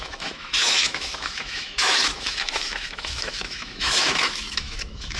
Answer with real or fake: fake